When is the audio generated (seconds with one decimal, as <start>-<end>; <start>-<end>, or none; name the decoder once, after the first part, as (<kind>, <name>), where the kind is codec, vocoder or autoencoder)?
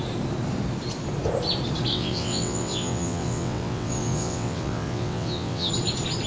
1.9-5.7 (vocoder, WaveNeXt)